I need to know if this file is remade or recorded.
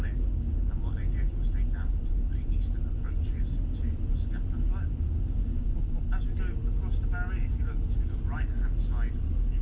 recorded